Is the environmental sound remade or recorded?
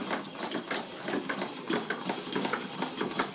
recorded